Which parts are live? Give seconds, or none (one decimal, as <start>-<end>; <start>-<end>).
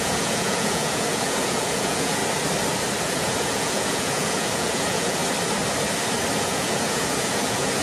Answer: 2.2-3.0; 5.2-6.4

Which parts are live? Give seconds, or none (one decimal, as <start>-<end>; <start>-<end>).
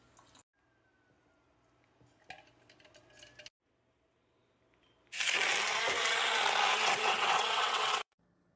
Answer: 0.0-6.8; 8.2-8.6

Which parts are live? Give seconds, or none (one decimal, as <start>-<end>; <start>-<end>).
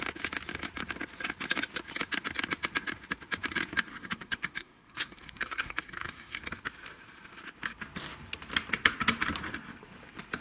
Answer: 0.0-3.9; 6.4-10.4